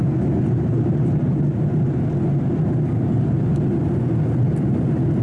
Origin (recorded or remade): recorded